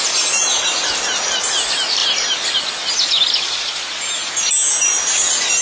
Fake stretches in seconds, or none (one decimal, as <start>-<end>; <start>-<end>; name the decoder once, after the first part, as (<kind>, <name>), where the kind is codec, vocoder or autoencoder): none